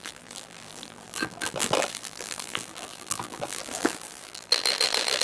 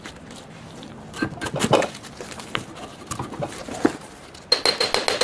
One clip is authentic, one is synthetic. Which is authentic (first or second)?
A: second